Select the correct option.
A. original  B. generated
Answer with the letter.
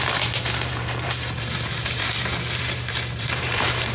B